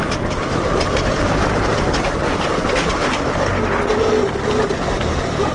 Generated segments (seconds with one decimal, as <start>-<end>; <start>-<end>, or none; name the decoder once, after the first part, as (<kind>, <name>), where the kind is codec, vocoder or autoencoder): 0.0-1.7 (vocoder, BigVGAN v2); 4.8-5.5

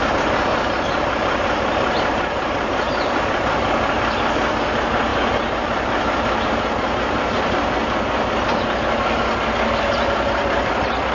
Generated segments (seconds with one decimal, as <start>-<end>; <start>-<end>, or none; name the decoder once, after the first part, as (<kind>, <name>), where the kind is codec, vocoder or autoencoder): 0.0-7.8 (vocoder, BigVGAN v2); 9.7-11.1

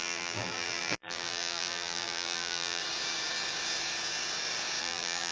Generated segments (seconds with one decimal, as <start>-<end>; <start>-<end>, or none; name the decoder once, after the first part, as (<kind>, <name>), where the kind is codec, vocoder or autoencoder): 0.0-2.8 (vocoder, BigVGAN v2); 4.8-5.3

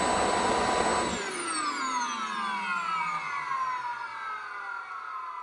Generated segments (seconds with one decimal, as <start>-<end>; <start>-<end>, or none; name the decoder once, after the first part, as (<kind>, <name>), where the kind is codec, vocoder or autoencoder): none

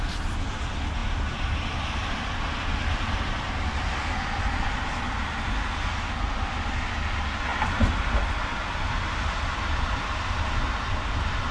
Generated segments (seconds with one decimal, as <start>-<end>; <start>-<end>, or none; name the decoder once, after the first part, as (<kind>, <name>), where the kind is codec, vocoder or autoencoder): none

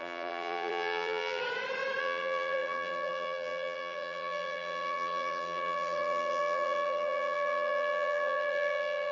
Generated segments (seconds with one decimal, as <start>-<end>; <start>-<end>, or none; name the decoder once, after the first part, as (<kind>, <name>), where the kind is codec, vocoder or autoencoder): 0.0-1.4 (vocoder, BigVGAN v2); 2.0-9.1